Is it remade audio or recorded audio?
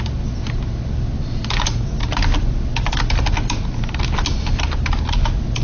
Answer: recorded